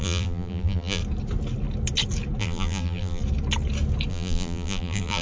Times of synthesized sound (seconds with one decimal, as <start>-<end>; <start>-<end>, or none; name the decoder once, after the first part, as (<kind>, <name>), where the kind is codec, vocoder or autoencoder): 0.0-1.0 (vocoder, BigVGAN v2); 2.4-3.2; 4.1-5.2